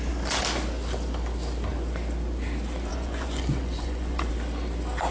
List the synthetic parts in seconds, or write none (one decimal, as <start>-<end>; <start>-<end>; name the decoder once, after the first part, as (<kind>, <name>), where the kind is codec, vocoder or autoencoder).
2.9-4.3 (vocoder, Vocos)